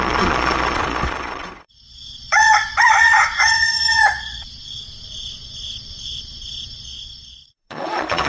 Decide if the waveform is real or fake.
fake